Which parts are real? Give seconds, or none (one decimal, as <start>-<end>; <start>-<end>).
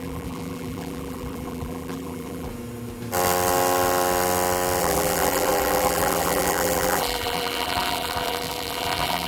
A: 2.5-4.8